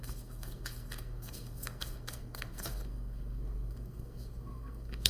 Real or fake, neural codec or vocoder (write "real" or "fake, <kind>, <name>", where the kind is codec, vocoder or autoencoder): fake, codec, SNAC